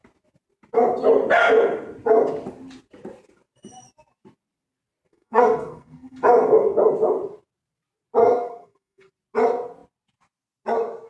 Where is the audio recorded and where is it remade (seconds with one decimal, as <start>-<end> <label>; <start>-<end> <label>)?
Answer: 0.0-5.1 recorded; 5.1-6.8 remade; 6.8-8.2 recorded; 8.2-9.1 remade; 9.1-11.1 recorded